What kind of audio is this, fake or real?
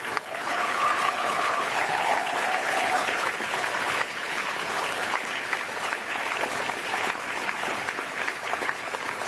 fake